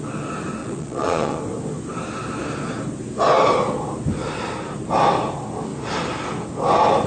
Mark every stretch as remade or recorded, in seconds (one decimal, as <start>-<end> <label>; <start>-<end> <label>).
0.0-0.6 recorded; 0.6-1.4 remade; 1.4-7.1 recorded